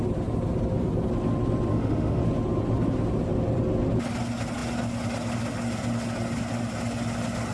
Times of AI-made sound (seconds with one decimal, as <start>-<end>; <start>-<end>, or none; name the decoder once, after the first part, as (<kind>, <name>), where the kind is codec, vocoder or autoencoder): 1.7-2.2 (autoencoder, DAC-VAE)